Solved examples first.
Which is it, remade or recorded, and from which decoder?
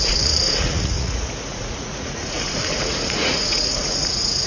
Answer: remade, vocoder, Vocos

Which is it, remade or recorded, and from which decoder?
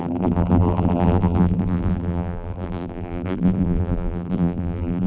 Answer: remade, vocoder, BigVGAN v2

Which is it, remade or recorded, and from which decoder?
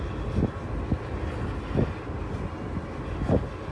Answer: recorded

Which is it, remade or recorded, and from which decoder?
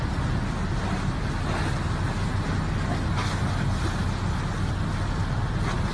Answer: recorded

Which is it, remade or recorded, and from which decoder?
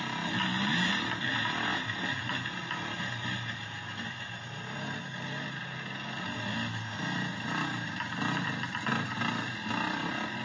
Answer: recorded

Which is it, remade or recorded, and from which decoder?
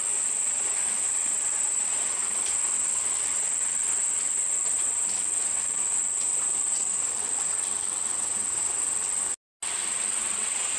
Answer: recorded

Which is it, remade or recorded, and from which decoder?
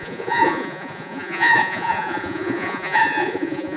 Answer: remade, vocoder, Vocos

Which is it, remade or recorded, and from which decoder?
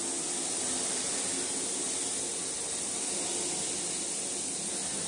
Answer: recorded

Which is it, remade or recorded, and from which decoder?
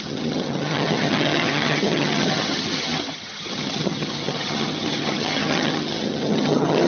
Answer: remade, vocoder, HiFi-GAN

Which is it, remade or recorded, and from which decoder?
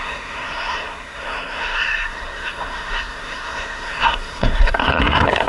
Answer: remade, codec, SNAC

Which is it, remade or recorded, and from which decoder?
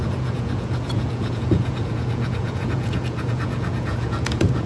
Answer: remade, vocoder, Vocos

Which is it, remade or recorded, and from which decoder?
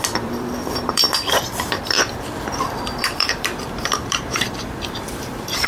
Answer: remade, vocoder, BigVGAN v2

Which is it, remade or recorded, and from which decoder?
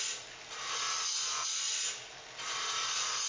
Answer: recorded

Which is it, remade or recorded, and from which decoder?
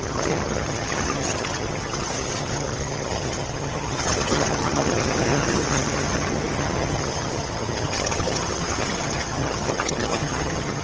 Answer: remade, vocoder, HiFi-GAN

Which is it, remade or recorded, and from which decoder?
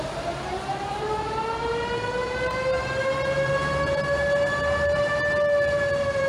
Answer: remade, vocoder, BigVGAN v2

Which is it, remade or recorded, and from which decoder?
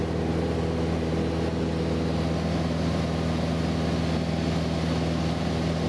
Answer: recorded